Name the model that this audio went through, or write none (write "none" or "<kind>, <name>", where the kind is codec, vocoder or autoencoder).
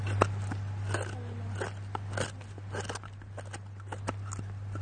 none